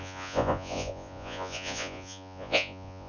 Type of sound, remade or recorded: remade